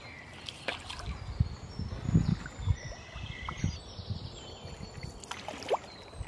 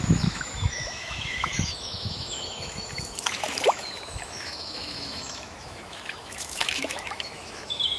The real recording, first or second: first